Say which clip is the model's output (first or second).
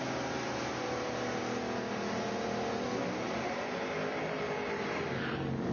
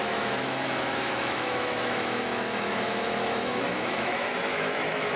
second